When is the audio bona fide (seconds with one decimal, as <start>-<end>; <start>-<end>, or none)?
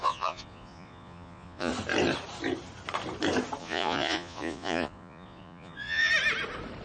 1.7-3.6; 6.1-6.8